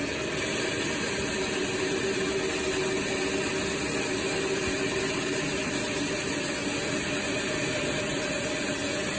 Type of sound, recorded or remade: recorded